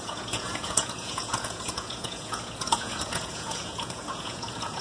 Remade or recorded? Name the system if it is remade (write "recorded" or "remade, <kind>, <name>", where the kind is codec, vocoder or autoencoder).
remade, vocoder, Vocos